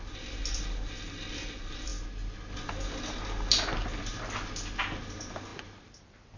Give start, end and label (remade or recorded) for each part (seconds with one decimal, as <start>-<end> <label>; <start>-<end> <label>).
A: 0.0-1.9 remade; 1.9-3.5 recorded; 3.5-4.1 remade; 4.1-5.0 recorded; 5.0-6.4 remade